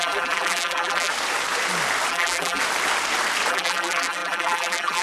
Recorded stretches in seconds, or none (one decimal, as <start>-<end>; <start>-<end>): 1.1-2.1; 2.6-3.5

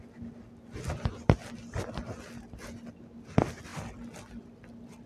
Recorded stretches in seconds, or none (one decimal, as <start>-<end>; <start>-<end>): 0.0-3.7; 4.3-5.1

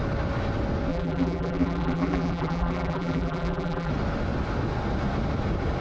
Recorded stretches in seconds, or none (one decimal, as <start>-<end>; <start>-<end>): 0.0-0.9; 3.9-5.8

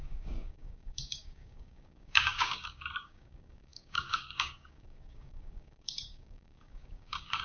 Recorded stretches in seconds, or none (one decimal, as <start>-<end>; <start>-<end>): none